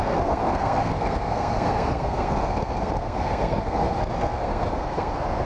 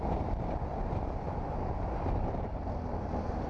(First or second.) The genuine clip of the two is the second